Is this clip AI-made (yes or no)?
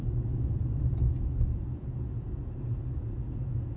yes